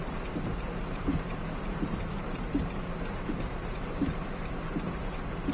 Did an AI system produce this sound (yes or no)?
yes